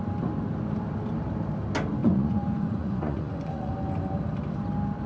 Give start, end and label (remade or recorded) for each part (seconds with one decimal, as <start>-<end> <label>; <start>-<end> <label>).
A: 0.0-2.0 recorded; 2.0-3.7 remade; 3.7-5.1 recorded